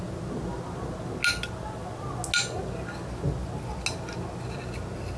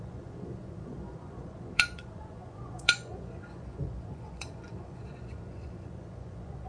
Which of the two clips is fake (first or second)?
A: second